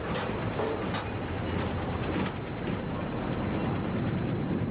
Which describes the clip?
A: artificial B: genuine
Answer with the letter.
B